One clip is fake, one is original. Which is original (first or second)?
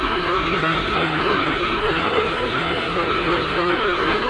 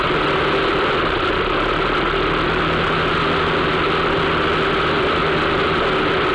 second